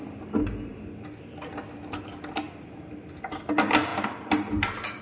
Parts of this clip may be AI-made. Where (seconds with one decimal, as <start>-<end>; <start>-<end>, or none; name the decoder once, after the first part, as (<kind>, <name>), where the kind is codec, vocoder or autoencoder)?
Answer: none